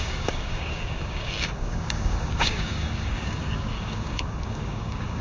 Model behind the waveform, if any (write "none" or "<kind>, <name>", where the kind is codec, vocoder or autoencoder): codec, DAC